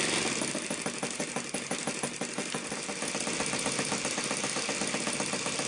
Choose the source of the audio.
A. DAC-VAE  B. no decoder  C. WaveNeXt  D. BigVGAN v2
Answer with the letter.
B